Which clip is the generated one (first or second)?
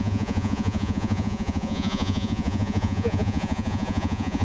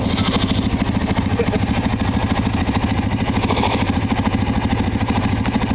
first